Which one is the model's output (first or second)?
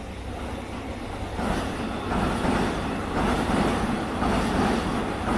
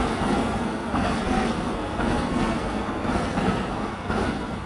second